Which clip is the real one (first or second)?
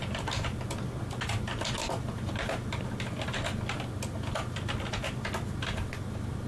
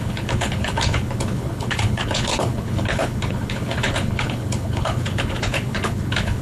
first